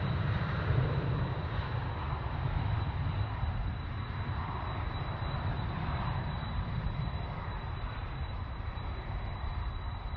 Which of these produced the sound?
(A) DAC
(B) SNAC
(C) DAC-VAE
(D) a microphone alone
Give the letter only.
D